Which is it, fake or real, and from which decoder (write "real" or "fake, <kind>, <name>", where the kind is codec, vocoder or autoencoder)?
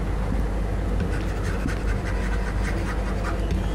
real